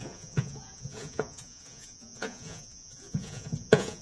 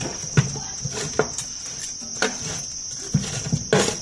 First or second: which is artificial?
first